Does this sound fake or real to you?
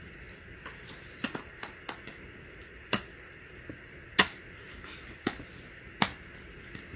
real